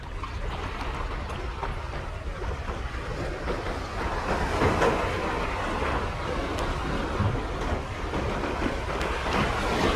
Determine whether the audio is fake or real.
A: real